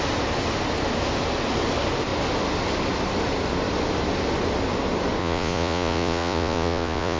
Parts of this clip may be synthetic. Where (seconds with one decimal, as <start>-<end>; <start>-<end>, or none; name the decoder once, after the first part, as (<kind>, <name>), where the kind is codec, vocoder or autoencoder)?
5.2-7.2 (vocoder, Vocos)